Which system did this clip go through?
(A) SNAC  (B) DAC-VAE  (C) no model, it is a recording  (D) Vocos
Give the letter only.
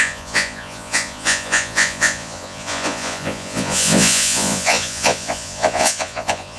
D